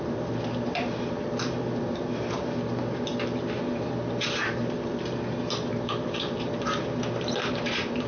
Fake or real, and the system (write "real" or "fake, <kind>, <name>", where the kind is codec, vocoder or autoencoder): fake, vocoder, BigVGAN v2